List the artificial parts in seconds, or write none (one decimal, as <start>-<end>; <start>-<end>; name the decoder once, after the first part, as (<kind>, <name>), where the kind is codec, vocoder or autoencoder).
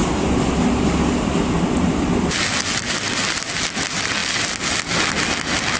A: none